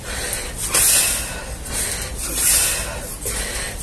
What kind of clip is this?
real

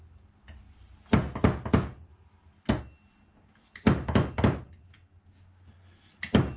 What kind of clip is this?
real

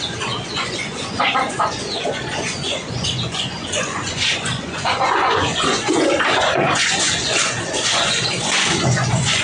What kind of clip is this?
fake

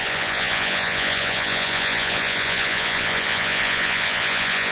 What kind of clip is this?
fake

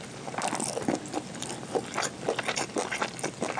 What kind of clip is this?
real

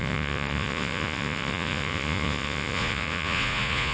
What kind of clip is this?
fake